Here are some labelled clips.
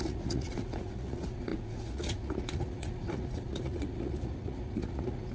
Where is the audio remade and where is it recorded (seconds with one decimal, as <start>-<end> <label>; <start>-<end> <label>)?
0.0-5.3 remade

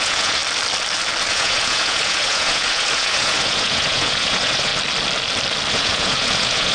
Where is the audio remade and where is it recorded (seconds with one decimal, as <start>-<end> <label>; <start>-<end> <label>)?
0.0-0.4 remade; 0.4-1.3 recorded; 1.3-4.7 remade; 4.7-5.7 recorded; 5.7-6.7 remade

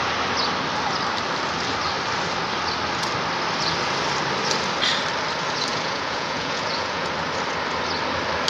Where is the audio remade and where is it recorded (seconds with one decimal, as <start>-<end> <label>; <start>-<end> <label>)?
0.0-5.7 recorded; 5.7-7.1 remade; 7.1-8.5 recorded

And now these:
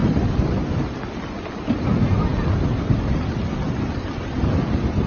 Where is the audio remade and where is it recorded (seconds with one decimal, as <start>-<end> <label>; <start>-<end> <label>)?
0.0-5.1 recorded